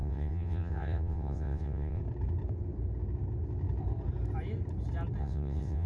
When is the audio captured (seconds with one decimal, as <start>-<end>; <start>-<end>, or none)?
2.0-5.2